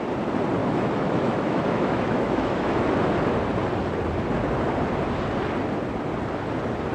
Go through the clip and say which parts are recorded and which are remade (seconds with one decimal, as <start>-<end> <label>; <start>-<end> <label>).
0.0-0.6 recorded; 0.6-2.9 remade; 2.9-6.9 recorded